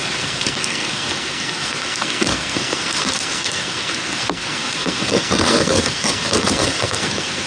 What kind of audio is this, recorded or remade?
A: remade